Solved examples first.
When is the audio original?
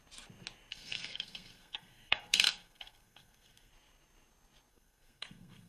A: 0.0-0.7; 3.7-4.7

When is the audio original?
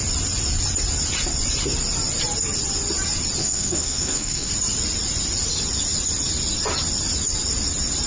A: 0.0-3.4; 4.5-8.1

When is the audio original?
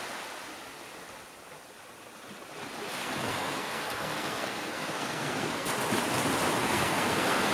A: 0.0-3.0; 5.7-6.6